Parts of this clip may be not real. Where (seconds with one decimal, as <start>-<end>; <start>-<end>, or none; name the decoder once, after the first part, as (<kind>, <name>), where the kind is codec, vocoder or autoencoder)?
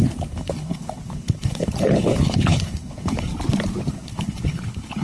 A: 0.0-3.3 (codec, HILCodec); 3.9-5.0